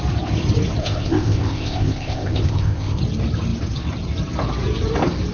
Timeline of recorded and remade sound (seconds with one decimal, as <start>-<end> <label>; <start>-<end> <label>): 0.0-0.8 recorded; 0.8-3.0 remade; 3.0-5.3 recorded

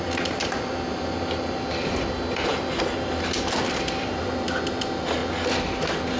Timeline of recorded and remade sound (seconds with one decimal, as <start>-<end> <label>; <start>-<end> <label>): 0.0-5.2 remade; 5.2-5.7 recorded; 5.7-6.2 remade

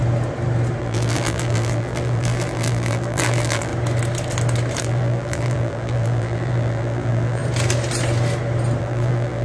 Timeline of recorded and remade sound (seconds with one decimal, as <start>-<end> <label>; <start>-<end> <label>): 0.0-0.8 recorded; 0.8-3.7 remade; 3.7-4.8 recorded; 4.8-7.4 remade; 7.4-8.8 recorded; 8.8-9.4 remade

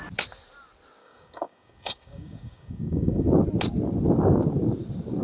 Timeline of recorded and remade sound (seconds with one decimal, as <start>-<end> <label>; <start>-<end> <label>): 0.0-1.0 recorded; 1.0-3.3 remade; 3.3-5.2 recorded